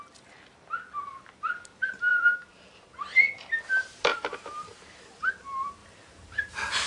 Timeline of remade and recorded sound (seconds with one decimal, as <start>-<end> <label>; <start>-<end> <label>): 0.0-2.1 recorded; 2.1-2.9 remade; 2.9-4.1 recorded; 4.1-5.3 remade; 5.3-5.8 recorded; 5.8-6.4 remade; 6.4-6.9 recorded